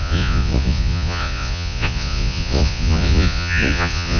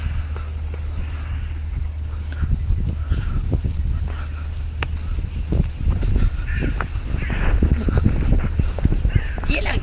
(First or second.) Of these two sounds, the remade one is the first